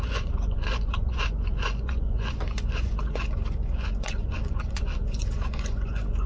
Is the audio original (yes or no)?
no